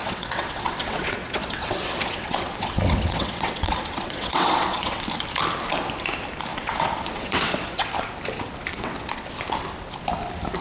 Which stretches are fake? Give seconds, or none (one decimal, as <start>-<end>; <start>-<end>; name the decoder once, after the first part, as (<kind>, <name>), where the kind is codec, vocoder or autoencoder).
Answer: 0.0-5.0 (vocoder, WaveNeXt); 6.5-7.9; 8.7-9.3